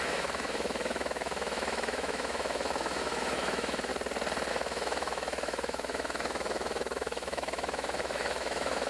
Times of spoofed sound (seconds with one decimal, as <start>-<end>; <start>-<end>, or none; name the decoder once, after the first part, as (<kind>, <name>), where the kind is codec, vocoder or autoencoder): 0.0-3.9 (autoencoder, DAC-VAE); 4.5-8.9